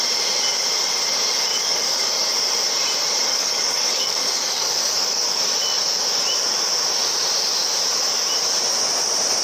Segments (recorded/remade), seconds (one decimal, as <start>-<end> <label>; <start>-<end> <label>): 0.0-1.5 recorded; 1.5-2.1 remade; 2.1-3.3 recorded; 3.3-5.4 remade; 5.4-9.4 recorded